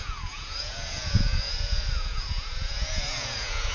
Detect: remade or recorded remade